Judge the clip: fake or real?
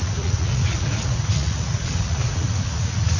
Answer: fake